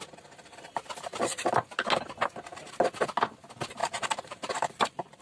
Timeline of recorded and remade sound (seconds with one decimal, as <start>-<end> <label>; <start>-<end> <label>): 0.0-3.8 recorded; 3.8-5.2 remade